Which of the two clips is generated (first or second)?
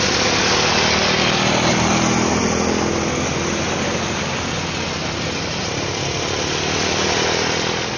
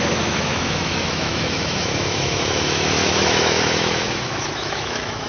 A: second